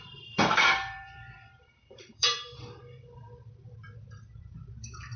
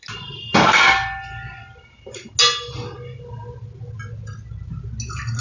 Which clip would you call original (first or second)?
second